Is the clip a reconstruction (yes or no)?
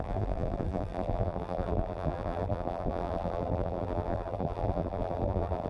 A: yes